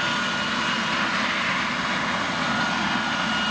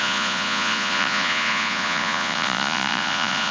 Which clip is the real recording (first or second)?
first